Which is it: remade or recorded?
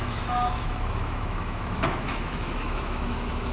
remade